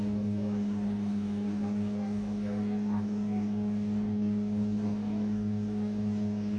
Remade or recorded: remade